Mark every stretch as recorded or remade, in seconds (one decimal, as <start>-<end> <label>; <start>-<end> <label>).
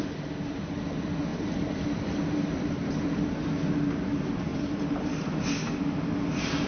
0.0-1.3 recorded; 1.3-3.3 remade; 3.3-4.5 recorded; 4.5-5.9 remade; 5.9-6.7 recorded